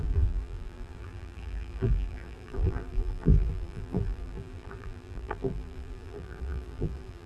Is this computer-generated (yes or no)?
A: yes